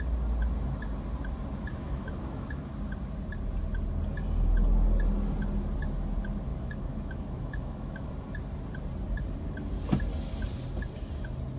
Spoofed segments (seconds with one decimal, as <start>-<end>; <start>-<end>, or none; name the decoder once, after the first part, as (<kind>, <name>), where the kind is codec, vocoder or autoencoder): 1.7-2.7 (autoencoder, DAC-VAE); 6.5-8.1